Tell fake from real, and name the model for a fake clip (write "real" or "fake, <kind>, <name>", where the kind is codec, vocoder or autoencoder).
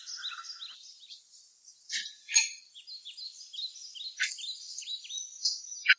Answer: real